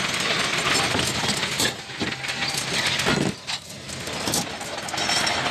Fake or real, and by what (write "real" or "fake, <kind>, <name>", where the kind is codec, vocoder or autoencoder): real